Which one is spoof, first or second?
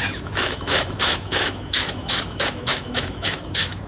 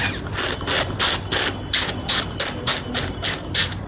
first